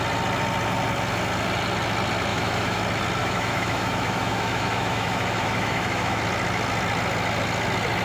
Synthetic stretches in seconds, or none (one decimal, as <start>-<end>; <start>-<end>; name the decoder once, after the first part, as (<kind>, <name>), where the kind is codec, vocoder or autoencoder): 2.3-2.8 (autoencoder, DAC-VAE); 3.2-6.2